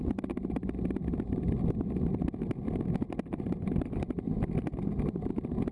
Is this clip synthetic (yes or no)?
no